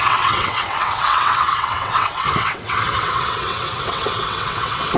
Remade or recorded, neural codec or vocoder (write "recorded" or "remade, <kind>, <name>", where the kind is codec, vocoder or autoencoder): remade, vocoder, WaveNeXt